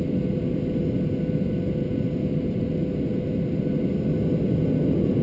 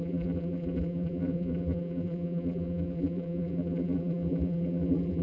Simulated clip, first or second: second